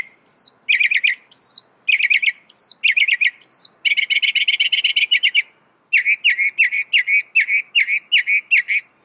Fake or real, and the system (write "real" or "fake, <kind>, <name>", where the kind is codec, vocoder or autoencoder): real